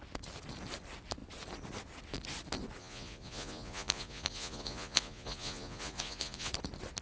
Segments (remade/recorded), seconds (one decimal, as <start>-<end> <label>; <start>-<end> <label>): 0.0-2.8 recorded; 2.8-6.5 remade; 6.5-7.0 recorded